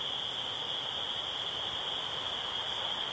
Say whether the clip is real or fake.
fake